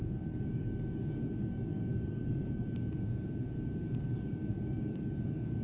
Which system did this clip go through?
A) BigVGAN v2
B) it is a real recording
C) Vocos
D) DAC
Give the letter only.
D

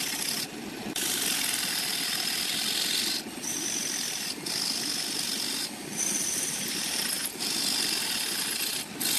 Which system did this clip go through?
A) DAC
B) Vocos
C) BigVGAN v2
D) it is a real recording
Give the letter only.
D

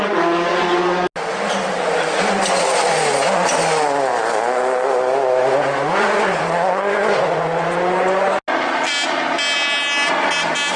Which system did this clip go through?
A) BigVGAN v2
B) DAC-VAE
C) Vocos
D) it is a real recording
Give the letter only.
D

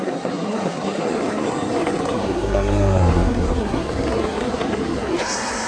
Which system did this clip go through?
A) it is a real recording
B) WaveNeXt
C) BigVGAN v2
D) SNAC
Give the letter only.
D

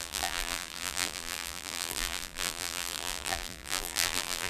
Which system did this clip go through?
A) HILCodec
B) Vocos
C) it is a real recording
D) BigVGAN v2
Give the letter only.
D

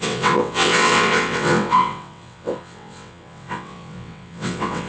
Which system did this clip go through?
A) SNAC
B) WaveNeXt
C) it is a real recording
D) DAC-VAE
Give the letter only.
B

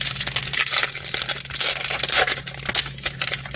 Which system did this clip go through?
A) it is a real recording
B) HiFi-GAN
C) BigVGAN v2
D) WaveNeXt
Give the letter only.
A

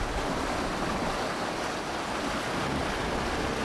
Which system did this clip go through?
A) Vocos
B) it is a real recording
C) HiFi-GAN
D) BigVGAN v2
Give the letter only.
D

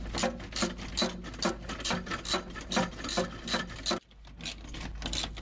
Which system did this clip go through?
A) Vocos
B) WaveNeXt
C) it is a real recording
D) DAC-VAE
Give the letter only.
C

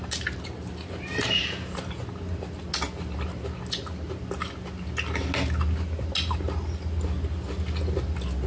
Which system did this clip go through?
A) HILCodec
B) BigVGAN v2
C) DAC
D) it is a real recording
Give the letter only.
D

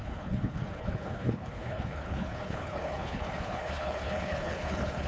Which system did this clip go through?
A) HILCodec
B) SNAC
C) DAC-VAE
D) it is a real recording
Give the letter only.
A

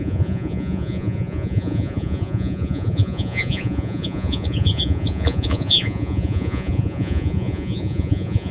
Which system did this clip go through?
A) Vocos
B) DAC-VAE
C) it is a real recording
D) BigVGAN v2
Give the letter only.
A